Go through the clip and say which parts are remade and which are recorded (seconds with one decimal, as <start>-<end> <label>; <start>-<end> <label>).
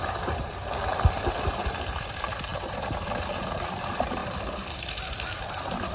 0.0-5.9 recorded